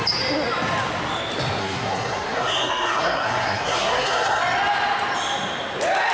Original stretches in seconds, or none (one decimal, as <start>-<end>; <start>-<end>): 0.0-1.6; 4.4-6.1